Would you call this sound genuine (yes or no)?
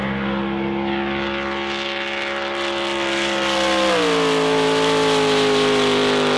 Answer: yes